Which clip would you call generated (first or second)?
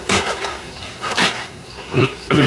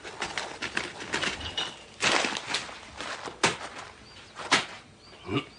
first